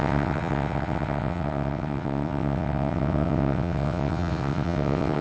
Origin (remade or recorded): remade